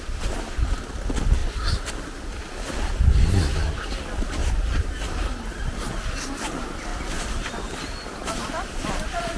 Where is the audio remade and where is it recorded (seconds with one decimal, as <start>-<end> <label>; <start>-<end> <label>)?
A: 0.0-1.4 recorded; 1.4-1.9 remade; 1.9-4.4 recorded; 4.4-5.0 remade; 5.0-6.9 recorded; 6.9-8.9 remade; 8.9-9.4 recorded